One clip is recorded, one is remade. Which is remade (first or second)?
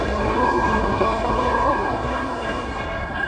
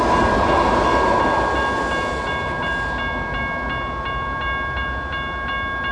first